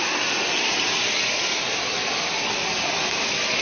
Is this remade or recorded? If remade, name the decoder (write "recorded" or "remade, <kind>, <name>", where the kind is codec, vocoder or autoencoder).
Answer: recorded